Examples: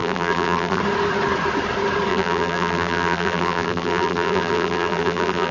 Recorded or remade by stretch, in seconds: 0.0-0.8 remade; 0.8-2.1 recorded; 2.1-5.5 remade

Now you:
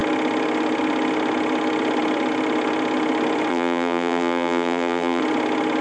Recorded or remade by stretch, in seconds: 0.0-3.5 recorded; 3.5-5.2 remade; 5.2-5.8 recorded

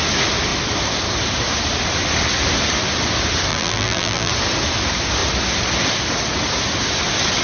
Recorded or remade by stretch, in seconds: 0.0-3.5 recorded; 3.5-4.3 remade; 4.3-7.4 recorded